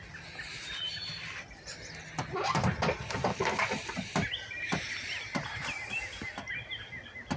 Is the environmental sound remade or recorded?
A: recorded